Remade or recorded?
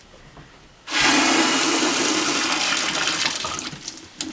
recorded